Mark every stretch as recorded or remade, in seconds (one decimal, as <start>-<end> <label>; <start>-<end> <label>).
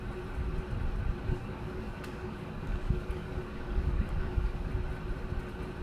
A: 0.0-1.2 recorded; 1.2-4.7 remade; 4.7-5.8 recorded